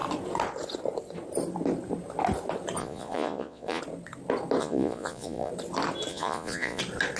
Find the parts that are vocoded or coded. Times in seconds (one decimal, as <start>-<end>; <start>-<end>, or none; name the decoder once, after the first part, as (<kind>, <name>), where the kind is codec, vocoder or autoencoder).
2.8-3.8 (vocoder, Vocos); 4.6-5.5; 6.1-6.8